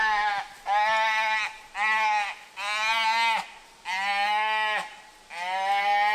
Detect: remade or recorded recorded